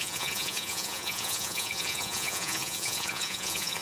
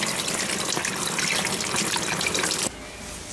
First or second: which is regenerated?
first